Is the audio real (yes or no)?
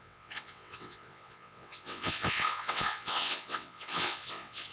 no